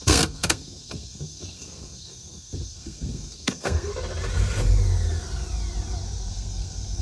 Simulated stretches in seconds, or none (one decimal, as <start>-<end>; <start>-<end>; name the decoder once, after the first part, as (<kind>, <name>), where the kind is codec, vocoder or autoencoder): 0.0-3.9 (codec, SNAC); 6.3-7.0